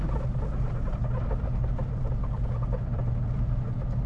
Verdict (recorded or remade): recorded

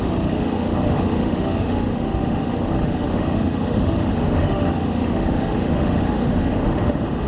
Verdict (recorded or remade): remade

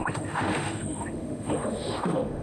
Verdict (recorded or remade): remade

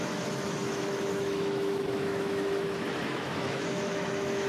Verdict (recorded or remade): remade